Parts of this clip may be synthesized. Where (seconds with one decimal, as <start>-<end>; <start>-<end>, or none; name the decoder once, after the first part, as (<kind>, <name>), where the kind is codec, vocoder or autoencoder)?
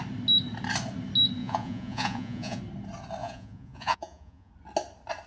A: 1.4-2.6 (vocoder, Vocos); 3.2-4.5